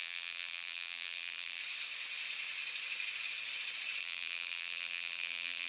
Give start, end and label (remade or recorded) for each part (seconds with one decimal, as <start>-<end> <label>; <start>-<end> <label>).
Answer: 0.0-1.6 remade; 1.6-4.0 recorded; 4.0-5.7 remade